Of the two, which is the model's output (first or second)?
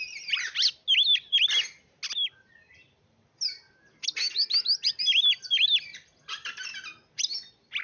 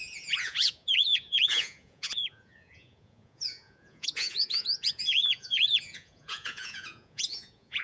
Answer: second